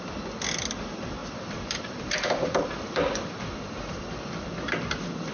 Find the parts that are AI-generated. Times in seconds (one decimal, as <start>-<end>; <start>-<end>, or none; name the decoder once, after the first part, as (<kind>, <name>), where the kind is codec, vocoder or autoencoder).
1.2-4.0 (vocoder, BigVGAN v2)